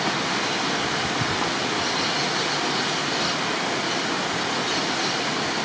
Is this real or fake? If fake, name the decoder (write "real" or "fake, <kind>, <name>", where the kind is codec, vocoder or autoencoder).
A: real